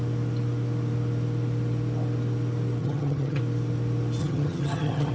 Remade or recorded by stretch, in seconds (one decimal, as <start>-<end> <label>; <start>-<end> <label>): 0.0-2.8 recorded; 2.8-3.4 remade; 3.4-4.2 recorded; 4.2-5.1 remade